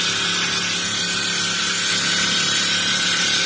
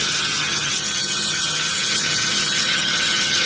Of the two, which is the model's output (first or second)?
second